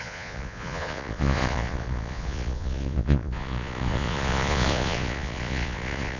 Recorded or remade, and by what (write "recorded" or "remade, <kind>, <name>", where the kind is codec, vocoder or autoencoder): remade, vocoder, Vocos